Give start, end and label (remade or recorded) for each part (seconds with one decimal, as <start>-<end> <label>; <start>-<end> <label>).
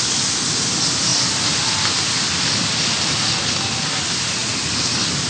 0.0-5.3 recorded